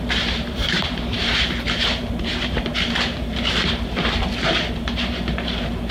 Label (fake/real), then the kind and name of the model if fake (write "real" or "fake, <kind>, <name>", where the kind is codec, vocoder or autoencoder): fake, vocoder, BigVGAN v2